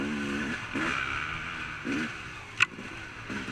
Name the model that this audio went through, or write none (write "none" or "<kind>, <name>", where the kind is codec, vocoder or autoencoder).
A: none